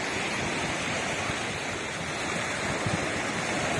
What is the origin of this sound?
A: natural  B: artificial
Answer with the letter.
A